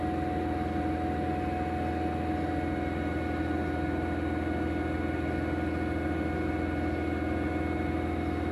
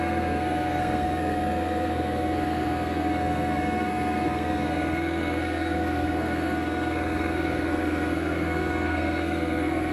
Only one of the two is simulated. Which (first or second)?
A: second